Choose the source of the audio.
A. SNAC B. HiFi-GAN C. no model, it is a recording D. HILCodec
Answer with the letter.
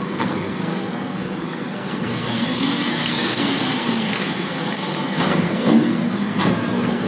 A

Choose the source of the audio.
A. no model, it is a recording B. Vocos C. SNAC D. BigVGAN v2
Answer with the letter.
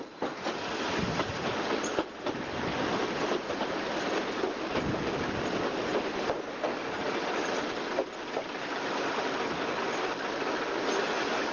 A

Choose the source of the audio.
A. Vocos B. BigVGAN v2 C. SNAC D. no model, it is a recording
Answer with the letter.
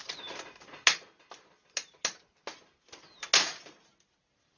D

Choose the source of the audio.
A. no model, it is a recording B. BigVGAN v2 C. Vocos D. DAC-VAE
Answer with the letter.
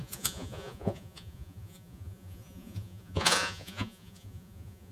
C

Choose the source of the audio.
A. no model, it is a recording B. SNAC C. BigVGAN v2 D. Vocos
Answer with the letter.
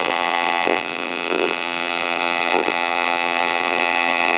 C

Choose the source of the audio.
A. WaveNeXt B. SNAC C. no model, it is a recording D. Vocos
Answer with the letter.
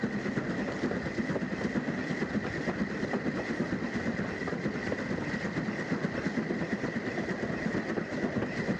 C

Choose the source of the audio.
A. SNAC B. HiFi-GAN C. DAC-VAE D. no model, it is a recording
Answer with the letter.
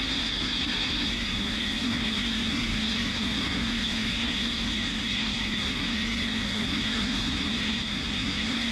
A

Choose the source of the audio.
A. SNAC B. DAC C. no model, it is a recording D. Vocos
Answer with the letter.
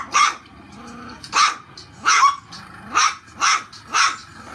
C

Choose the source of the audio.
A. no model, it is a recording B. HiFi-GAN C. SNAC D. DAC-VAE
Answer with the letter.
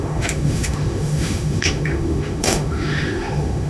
D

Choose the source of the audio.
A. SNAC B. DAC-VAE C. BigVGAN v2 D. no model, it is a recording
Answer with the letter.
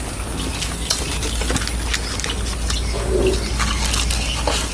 D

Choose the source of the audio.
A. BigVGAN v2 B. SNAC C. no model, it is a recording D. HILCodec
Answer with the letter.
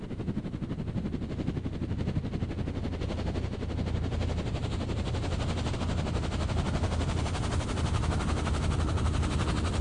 C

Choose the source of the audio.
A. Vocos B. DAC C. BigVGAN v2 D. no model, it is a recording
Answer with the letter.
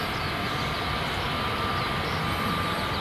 D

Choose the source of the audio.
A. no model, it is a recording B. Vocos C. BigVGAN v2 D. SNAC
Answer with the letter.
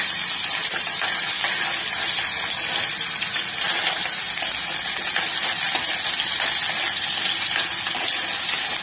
A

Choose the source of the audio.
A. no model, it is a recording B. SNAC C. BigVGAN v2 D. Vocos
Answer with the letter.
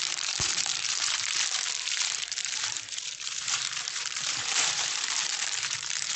C